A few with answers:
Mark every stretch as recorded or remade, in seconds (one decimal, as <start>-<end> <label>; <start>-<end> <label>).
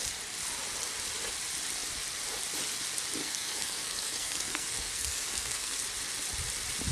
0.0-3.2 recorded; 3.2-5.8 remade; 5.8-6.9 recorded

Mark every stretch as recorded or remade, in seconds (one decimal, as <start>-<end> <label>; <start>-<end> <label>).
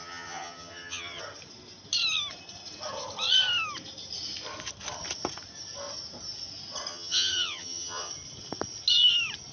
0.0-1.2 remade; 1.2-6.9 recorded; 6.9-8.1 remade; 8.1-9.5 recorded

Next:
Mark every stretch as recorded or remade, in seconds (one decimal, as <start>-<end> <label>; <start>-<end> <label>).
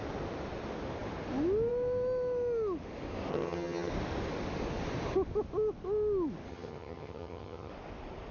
0.0-3.3 recorded; 3.3-3.9 remade; 3.9-6.5 recorded; 6.5-7.7 remade; 7.7-8.3 recorded